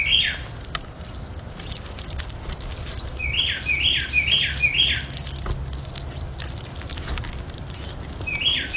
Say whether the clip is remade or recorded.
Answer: recorded